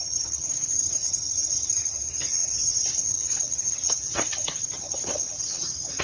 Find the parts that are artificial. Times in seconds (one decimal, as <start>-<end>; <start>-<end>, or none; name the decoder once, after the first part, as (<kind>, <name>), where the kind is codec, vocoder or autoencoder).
0.0-6.0 (vocoder, HiFi-GAN)